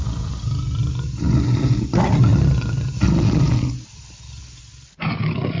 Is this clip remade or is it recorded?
recorded